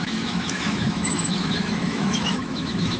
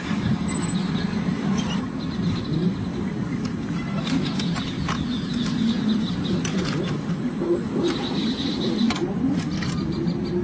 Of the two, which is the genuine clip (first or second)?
second